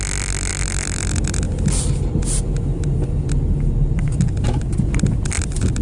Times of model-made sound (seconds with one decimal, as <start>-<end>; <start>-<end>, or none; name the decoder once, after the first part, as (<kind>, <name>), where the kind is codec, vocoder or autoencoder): none